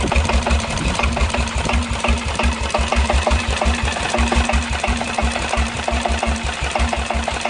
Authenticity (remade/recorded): remade